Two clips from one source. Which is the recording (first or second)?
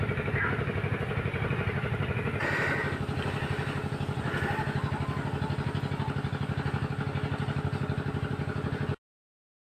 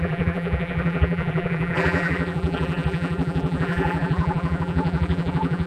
first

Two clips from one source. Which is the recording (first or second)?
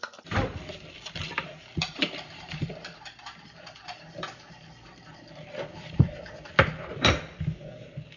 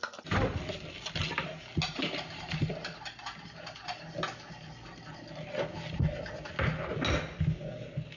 second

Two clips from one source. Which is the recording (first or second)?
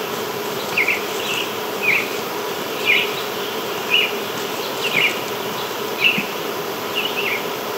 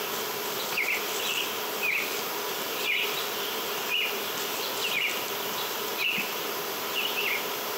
second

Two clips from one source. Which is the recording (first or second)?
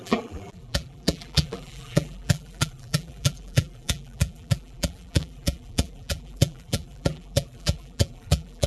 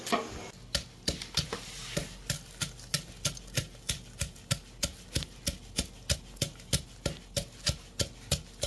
second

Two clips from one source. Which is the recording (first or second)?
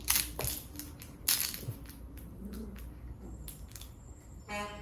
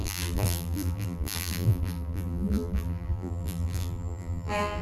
first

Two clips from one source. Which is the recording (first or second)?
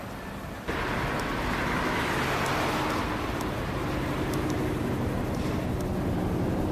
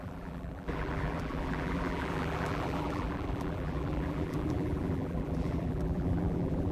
first